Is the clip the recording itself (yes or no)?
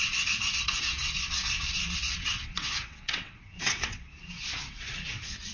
no